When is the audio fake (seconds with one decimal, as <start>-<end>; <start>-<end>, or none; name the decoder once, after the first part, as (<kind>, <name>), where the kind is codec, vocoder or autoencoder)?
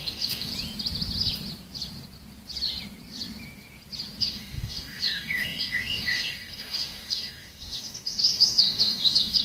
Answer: 0.0-0.5 (codec, DAC); 4.2-9.4